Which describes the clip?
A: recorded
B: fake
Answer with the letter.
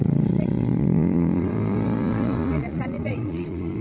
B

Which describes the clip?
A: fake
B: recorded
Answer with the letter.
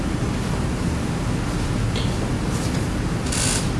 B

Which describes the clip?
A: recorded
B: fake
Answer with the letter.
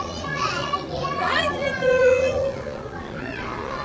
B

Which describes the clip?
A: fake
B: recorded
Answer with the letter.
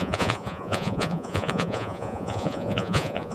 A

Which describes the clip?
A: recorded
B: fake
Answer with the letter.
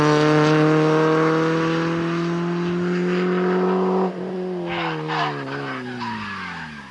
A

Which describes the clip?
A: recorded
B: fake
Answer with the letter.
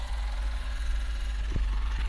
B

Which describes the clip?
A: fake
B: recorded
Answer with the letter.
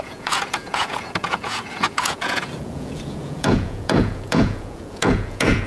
A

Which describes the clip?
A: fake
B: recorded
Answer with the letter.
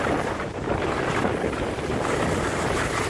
B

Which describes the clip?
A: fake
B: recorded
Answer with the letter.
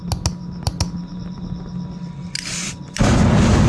B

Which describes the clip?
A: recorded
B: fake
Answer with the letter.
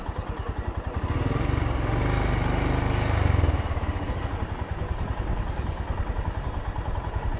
A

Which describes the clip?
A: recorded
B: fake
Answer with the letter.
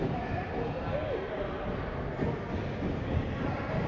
A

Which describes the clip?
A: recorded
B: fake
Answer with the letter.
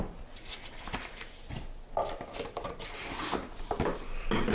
A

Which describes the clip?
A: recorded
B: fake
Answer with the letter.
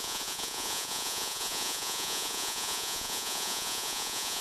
B